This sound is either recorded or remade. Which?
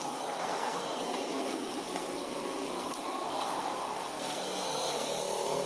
remade